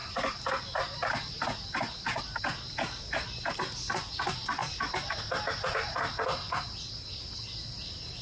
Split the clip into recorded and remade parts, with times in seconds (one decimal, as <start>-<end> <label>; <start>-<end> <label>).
0.0-8.2 recorded